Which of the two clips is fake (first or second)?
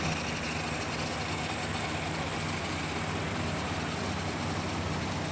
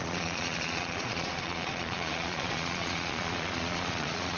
second